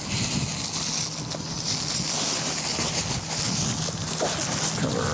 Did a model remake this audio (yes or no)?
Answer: no